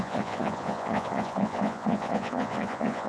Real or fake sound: fake